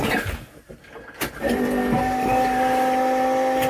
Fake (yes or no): no